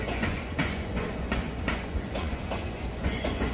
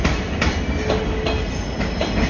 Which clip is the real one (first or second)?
second